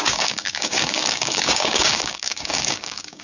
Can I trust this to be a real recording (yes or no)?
no